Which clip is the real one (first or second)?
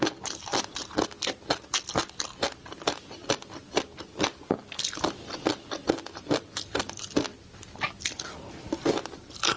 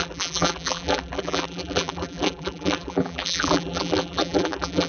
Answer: first